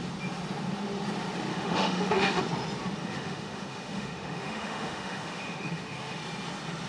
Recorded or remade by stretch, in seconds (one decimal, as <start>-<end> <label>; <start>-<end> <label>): 0.0-1.5 recorded; 1.5-2.4 remade; 2.4-3.0 recorded; 3.0-6.2 remade; 6.2-6.9 recorded